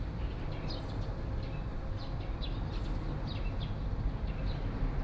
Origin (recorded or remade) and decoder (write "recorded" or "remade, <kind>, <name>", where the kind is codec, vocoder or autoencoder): recorded